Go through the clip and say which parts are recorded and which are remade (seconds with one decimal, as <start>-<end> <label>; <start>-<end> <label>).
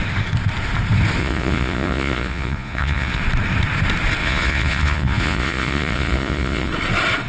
0.0-1.2 recorded; 1.2-3.2 remade; 3.2-4.2 recorded; 4.2-6.7 remade; 6.7-7.3 recorded